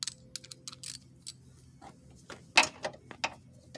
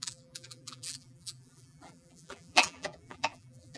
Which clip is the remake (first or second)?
second